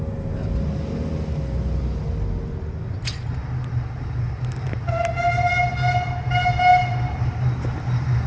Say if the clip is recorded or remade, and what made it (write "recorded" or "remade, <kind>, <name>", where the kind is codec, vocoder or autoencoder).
recorded